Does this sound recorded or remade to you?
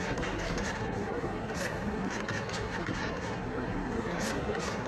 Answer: remade